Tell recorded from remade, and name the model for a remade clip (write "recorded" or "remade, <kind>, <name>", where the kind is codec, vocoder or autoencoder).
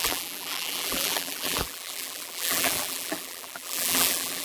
remade, vocoder, BigVGAN v2